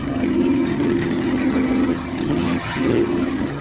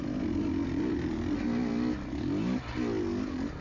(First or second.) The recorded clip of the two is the second